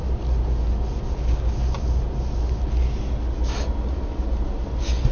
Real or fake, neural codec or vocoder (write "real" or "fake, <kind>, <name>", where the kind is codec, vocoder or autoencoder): real